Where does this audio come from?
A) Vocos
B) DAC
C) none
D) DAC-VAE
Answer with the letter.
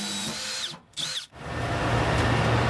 C